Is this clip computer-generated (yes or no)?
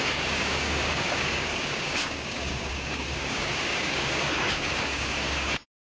yes